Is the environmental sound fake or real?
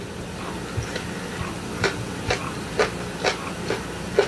real